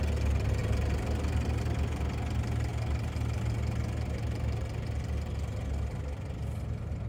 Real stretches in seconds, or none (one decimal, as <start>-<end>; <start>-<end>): 0.0-7.1